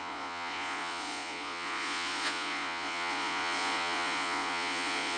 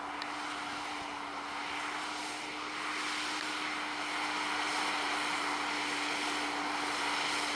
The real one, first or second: second